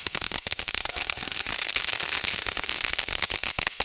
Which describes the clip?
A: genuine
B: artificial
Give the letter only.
B